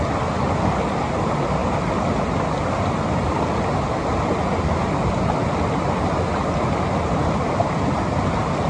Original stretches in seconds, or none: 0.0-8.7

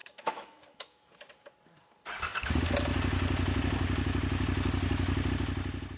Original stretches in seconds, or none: 1.1-6.0

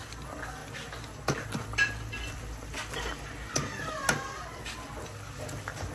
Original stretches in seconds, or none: 0.0-5.9

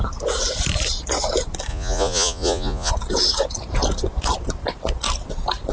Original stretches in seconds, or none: 0.0-1.7; 2.9-5.7

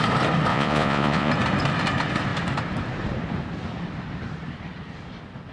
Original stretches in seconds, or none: 0.0-0.5; 1.3-5.5

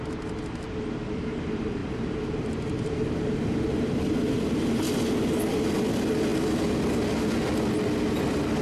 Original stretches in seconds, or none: 0.0-8.6